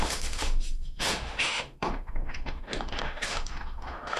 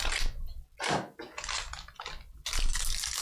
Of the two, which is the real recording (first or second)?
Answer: second